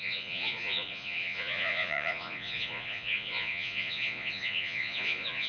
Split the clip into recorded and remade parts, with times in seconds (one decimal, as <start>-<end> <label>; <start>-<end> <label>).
0.0-5.5 remade